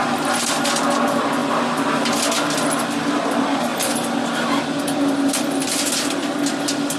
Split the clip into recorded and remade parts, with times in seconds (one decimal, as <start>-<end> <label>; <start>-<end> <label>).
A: 0.0-7.0 recorded

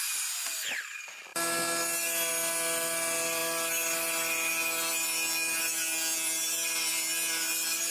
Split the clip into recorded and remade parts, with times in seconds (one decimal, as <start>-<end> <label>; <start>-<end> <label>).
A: 0.0-7.9 recorded